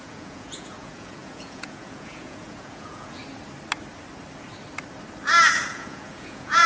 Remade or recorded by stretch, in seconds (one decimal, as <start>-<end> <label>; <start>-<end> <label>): 0.0-3.2 remade; 3.2-5.7 recorded; 5.7-6.7 remade